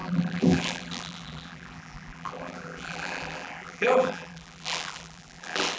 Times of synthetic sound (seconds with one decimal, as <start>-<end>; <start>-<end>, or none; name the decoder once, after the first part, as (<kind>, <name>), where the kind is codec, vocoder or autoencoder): 0.0-5.8 (vocoder, BigVGAN v2)

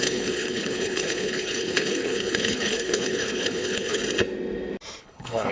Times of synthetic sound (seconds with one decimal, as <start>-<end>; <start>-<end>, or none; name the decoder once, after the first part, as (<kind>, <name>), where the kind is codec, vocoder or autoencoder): 0.0-4.0 (codec, HILCodec); 5.0-5.5

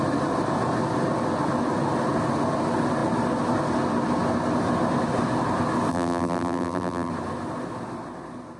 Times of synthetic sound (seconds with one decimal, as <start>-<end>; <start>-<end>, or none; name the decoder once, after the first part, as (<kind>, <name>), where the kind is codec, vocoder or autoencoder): 5.9-7.1 (vocoder, BigVGAN v2)

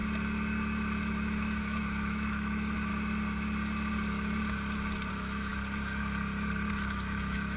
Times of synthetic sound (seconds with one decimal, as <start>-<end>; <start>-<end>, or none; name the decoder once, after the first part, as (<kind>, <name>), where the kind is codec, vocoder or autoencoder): 1.0-2.9 (autoencoder, DAC-VAE); 5.1-5.5; 6.7-7.6

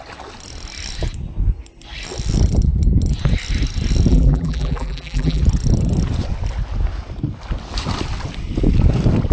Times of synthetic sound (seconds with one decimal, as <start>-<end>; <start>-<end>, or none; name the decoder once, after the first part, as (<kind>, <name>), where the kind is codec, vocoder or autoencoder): 4.1-5.4 (vocoder, BigVGAN v2)

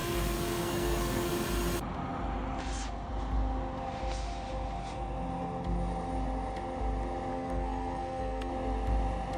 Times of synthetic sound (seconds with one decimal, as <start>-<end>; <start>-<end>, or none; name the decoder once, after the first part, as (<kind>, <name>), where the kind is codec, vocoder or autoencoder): 0.0-1.3 (codec, SNAC); 7.3-8.5